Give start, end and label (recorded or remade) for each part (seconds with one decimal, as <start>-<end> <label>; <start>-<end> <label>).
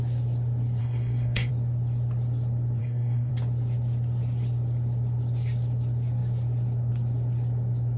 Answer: 0.0-0.8 recorded; 0.8-1.5 remade; 1.5-2.8 recorded; 2.8-3.3 remade; 3.3-8.0 recorded